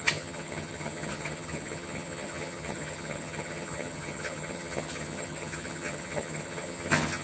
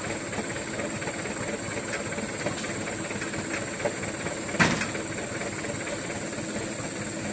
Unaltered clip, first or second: second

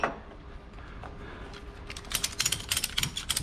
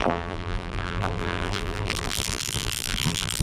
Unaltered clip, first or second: first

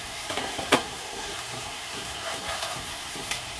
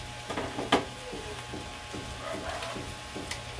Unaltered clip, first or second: second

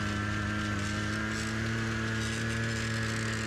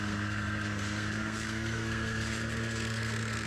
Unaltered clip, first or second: first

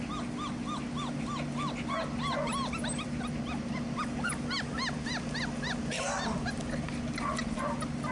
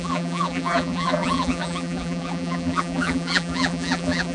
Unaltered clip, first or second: first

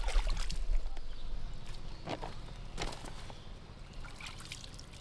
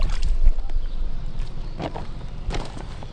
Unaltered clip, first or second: first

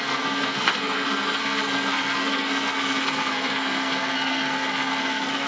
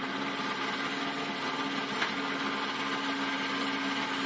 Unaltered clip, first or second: second